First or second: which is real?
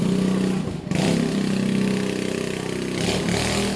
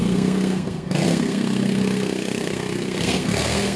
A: first